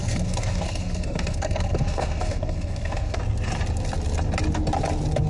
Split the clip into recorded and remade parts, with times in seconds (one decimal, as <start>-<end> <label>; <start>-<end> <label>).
0.0-3.2 remade; 3.2-5.3 recorded